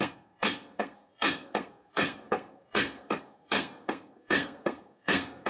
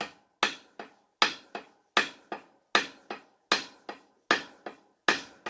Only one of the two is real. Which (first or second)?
second